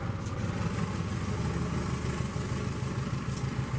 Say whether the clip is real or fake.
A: real